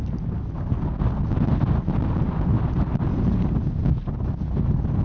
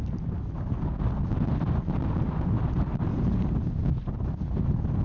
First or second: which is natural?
first